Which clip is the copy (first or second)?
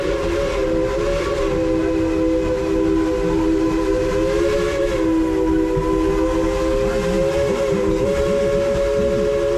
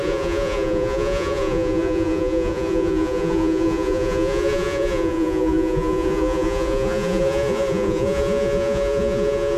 second